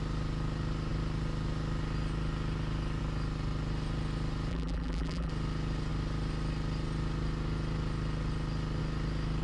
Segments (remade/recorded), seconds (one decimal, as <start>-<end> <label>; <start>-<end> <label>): 0.0-4.5 recorded; 4.5-5.3 remade; 5.3-9.4 recorded